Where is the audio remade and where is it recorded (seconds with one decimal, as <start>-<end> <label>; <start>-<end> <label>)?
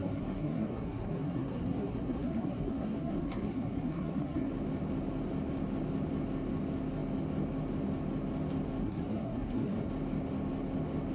0.0-4.5 remade; 4.5-8.8 recorded; 8.8-9.9 remade; 9.9-11.1 recorded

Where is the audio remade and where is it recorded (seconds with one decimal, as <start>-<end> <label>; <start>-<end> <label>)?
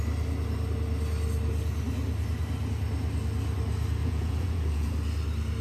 0.0-4.0 recorded; 4.0-4.9 remade; 4.9-5.6 recorded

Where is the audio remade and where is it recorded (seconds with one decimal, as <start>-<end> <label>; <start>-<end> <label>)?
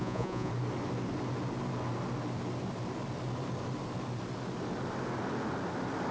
0.0-0.5 remade; 0.5-6.1 recorded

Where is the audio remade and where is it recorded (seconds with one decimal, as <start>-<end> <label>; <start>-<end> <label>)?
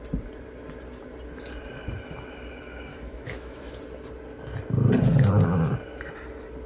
0.0-2.9 recorded; 2.9-3.8 remade; 3.8-6.7 recorded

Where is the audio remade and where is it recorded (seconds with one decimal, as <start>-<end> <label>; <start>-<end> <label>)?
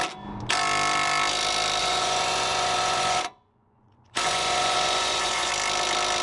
0.0-1.8 recorded; 1.8-5.5 remade; 5.5-6.2 recorded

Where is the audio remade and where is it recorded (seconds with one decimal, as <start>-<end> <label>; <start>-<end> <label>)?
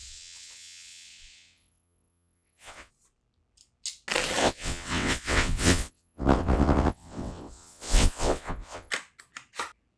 0.0-2.9 remade; 2.9-4.4 recorded; 4.4-8.9 remade; 8.9-10.0 recorded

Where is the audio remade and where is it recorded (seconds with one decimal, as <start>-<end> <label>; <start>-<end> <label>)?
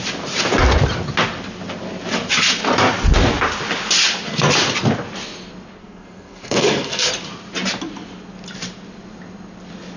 0.0-5.8 recorded; 5.8-7.1 remade; 7.1-10.0 recorded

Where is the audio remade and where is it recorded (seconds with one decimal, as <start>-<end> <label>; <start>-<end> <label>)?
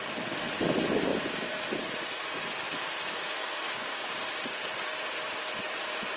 0.0-3.4 recorded; 3.4-4.6 remade; 4.6-6.2 recorded